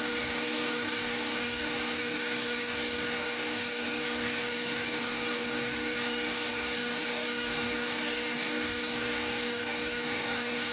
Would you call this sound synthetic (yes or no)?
yes